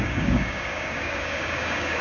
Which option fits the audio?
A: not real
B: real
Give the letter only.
A